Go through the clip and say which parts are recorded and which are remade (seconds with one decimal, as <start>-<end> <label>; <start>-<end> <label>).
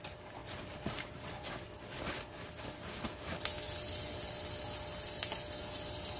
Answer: 0.0-6.2 recorded